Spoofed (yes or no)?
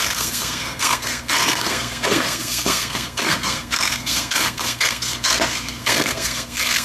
yes